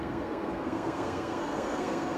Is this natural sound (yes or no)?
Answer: no